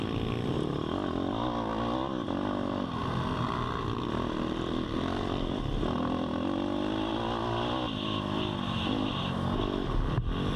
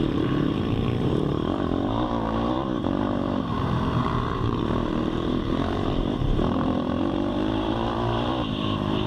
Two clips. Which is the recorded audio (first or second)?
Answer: first